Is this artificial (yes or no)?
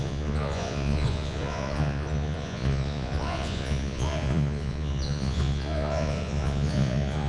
yes